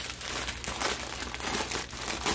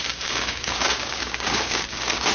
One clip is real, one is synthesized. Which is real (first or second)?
first